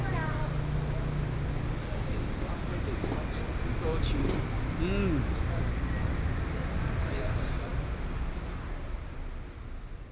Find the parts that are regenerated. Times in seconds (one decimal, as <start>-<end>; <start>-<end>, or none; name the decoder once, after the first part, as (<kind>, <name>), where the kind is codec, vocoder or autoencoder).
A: none